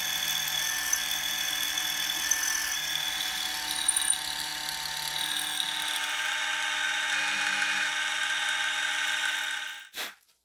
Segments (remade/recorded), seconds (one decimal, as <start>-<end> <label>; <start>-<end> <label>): 0.0-10.4 recorded